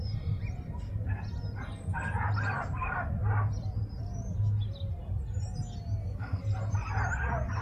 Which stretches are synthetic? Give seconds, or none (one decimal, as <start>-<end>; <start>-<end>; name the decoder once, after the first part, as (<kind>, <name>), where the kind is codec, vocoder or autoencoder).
6.0-6.5 (codec, SNAC)